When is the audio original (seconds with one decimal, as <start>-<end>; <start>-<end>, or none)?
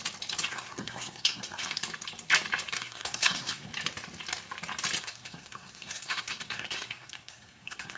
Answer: 0.0-0.5; 1.8-2.7; 3.7-5.0